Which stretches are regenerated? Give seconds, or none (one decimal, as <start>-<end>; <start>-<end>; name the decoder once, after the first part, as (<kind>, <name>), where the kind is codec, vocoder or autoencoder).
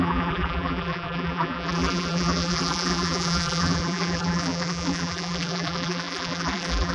0.0-6.9 (vocoder, BigVGAN v2)